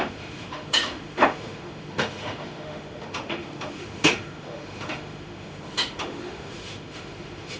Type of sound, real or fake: fake